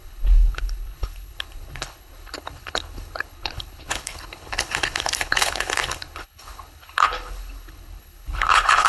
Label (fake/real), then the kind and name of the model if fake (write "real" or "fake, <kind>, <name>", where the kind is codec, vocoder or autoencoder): fake, codec, HILCodec